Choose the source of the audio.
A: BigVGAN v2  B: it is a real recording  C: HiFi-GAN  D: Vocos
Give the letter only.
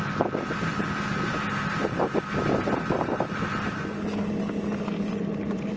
B